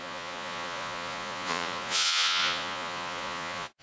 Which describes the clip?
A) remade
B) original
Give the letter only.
A